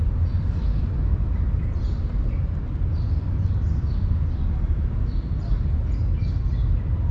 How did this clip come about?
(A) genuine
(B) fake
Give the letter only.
A